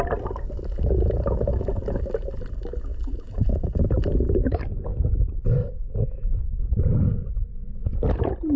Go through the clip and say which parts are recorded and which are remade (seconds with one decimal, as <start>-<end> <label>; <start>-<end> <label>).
0.0-2.9 recorded; 2.9-3.8 remade; 3.8-8.6 recorded